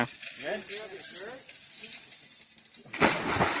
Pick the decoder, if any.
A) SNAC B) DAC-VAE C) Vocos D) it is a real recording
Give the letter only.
D